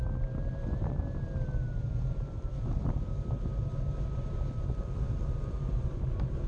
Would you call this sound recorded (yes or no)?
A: yes